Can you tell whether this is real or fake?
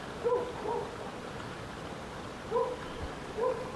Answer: real